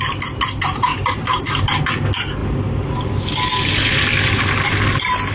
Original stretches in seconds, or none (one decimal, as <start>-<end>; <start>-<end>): 0.0-0.9; 1.8-5.3